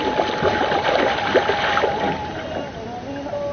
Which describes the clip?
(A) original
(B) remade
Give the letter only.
B